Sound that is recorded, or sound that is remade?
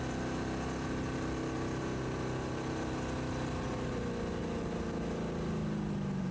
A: recorded